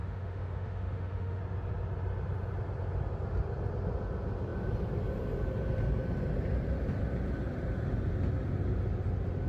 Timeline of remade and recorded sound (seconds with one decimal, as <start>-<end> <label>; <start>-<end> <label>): 0.0-1.4 remade; 1.4-9.5 recorded